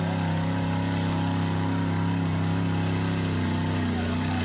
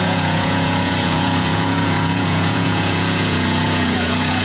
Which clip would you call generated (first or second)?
second